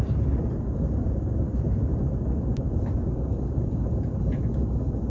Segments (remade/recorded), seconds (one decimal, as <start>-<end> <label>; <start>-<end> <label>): 0.0-5.1 recorded